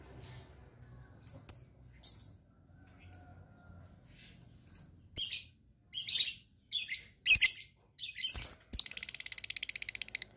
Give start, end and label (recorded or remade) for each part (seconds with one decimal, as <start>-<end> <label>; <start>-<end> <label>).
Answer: 0.0-10.4 recorded